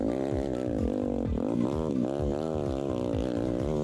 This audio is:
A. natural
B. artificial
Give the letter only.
A